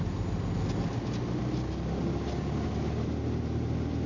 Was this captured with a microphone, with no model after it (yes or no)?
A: yes